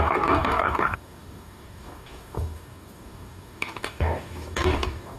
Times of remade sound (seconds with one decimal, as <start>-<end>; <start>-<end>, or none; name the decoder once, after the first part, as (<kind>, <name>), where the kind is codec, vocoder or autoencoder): 0.0-5.2 (codec, DAC)